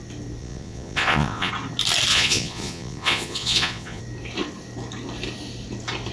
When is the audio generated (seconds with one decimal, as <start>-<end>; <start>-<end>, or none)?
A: 0.4-1.5; 2.1-4.0